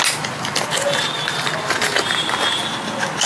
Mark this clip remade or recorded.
recorded